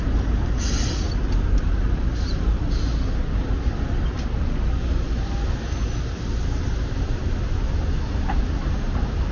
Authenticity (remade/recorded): recorded